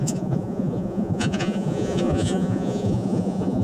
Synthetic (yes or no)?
yes